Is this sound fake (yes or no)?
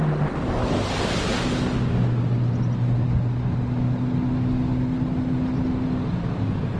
no